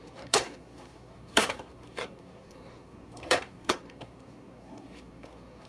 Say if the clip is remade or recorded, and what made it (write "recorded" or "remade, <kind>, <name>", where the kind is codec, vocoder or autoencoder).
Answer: remade, codec, SNAC